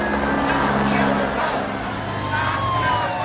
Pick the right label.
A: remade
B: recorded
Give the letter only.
B